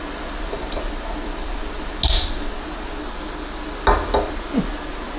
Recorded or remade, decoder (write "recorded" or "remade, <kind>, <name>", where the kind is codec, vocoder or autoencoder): recorded